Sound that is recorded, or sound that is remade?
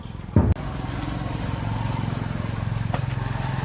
recorded